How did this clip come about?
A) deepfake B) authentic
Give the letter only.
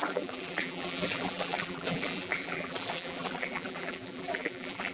A